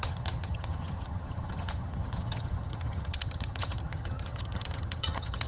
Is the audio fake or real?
fake